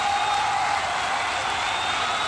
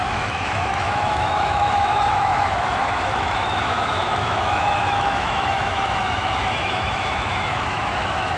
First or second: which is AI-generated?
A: second